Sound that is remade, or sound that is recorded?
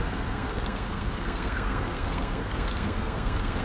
remade